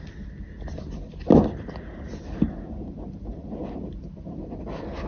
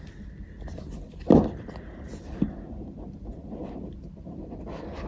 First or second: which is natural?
first